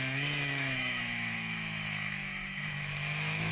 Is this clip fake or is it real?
fake